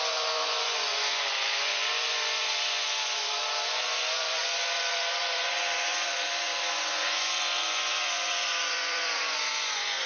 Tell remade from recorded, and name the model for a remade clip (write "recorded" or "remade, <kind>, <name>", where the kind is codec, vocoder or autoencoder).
remade, vocoder, Vocos